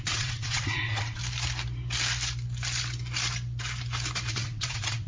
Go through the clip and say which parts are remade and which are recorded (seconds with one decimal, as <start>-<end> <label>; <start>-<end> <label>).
0.0-1.2 remade; 1.2-4.3 recorded; 4.3-5.1 remade

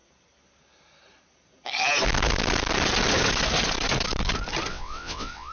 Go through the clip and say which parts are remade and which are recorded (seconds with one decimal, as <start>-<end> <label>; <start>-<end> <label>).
0.0-4.7 recorded; 4.7-5.5 remade

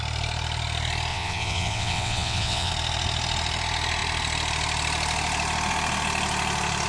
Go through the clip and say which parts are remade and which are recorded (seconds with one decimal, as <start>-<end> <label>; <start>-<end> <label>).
0.0-1.1 recorded; 1.1-2.7 remade; 2.7-6.9 recorded

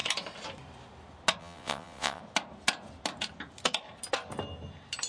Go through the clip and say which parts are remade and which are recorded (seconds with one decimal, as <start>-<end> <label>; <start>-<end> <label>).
0.0-1.4 recorded; 1.4-2.2 remade; 2.2-5.1 recorded

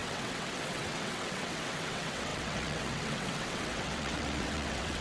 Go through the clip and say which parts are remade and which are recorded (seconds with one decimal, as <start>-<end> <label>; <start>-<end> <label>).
0.0-5.0 remade

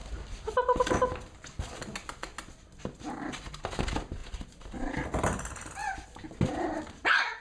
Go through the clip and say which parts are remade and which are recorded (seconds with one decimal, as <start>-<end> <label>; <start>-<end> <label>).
0.0-7.4 recorded